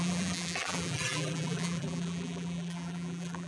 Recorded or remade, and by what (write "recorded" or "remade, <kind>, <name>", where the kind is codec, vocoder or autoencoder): remade, vocoder, BigVGAN v2